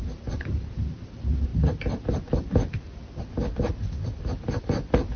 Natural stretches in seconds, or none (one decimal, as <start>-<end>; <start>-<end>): 0.0-5.2